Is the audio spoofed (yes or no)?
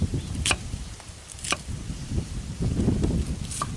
no